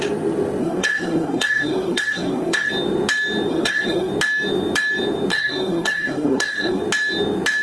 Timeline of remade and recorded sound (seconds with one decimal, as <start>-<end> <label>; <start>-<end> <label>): 0.0-0.6 recorded; 0.6-2.7 remade; 2.7-3.5 recorded; 3.5-4.1 remade; 4.1-5.3 recorded; 5.3-6.8 remade; 6.8-7.6 recorded